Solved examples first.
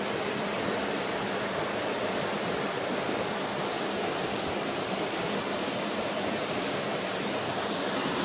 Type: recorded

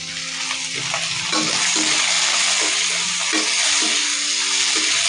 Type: recorded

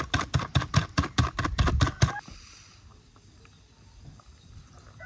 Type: recorded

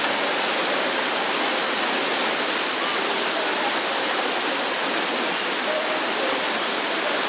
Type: recorded